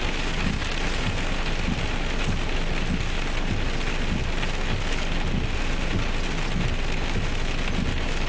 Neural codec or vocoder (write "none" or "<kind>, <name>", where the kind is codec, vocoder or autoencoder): none